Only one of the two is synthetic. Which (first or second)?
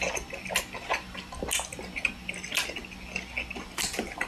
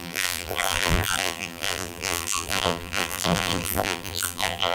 second